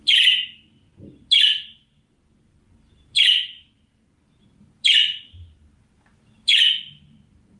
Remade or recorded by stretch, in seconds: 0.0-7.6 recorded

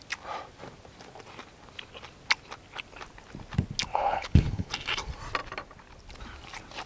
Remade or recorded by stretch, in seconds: 0.0-3.9 recorded; 3.9-4.7 remade; 4.7-6.9 recorded